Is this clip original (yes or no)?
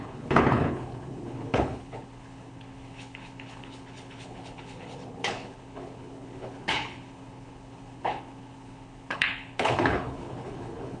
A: no